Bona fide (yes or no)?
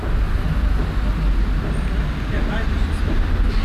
yes